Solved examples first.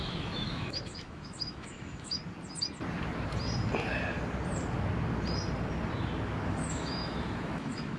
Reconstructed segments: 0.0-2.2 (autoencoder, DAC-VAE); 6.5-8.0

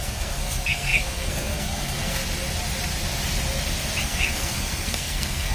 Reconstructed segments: 0.0-2.2 (codec, SNAC); 4.0-5.5

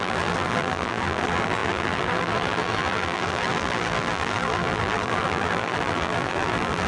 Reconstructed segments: 0.0-6.9 (vocoder, BigVGAN v2)

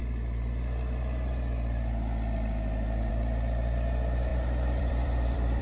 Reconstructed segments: 4.3-5.6 (vocoder, BigVGAN v2)